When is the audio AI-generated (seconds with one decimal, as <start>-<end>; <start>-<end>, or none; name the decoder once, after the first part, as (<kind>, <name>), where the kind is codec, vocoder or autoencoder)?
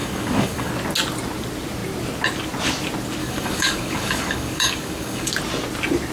0.0-0.7 (codec, DAC); 3.2-5.3